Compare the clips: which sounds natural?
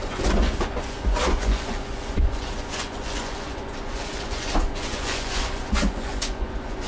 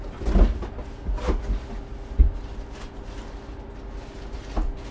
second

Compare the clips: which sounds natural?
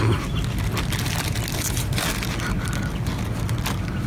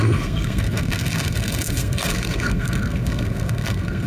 first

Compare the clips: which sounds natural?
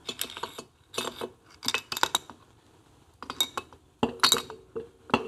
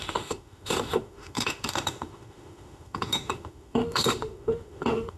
first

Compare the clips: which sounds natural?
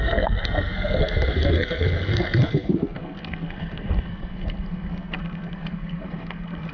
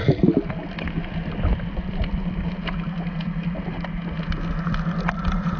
second